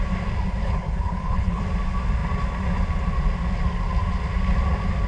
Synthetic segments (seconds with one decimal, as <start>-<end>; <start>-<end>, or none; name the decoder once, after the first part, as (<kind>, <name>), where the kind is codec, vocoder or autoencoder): 0.6-1.6 (codec, HILCodec)